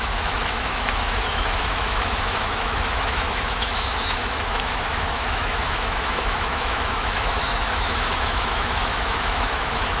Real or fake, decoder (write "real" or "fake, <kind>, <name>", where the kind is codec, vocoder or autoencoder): fake, autoencoder, DAC-VAE